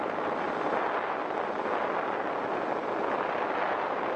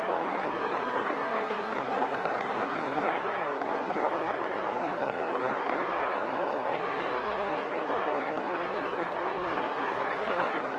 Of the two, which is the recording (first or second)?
first